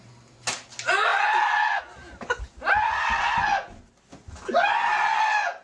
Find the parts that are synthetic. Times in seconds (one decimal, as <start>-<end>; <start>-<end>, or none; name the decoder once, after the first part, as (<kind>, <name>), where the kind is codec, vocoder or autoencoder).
none

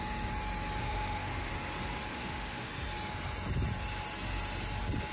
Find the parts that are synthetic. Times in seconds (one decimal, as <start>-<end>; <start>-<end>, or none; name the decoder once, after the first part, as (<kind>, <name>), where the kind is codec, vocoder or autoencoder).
0.8-1.5 (autoencoder, DAC-VAE); 2.1-2.7

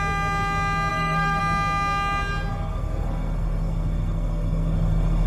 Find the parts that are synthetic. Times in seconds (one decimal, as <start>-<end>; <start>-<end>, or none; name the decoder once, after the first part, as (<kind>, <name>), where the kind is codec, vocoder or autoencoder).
0.9-1.4 (codec, SNAC); 2.5-5.3

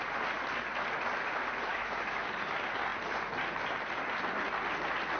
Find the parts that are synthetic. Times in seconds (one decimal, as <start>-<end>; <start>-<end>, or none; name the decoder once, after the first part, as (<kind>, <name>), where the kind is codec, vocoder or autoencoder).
1.7-2.3 (autoencoder, DAC-VAE)